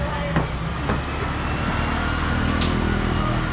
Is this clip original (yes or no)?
yes